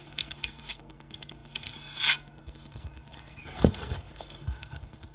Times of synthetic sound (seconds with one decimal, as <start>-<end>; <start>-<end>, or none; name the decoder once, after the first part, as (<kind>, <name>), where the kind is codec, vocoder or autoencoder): 0.0-5.1 (codec, SNAC)